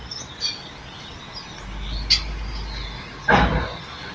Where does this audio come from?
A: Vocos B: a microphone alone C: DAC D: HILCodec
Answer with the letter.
B